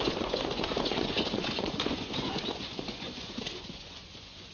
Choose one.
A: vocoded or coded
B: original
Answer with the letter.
A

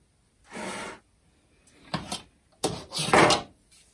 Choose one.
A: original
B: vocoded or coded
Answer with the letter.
A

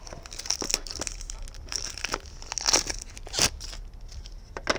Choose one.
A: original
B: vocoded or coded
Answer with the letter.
A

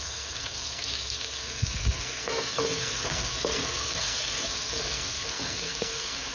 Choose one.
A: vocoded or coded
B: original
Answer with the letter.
A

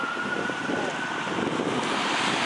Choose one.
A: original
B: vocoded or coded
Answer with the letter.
A